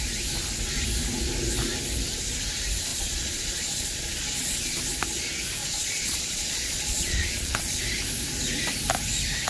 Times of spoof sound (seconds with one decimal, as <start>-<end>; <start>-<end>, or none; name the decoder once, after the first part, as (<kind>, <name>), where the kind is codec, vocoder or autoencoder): 2.9-4.8 (vocoder, Vocos); 5.6-7.8